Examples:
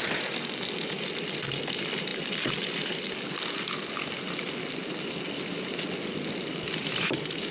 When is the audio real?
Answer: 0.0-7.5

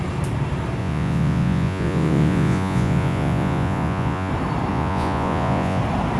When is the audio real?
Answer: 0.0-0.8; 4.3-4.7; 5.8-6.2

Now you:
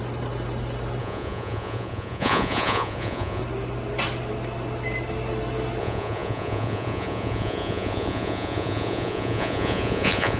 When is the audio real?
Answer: 0.0-1.0; 3.4-5.8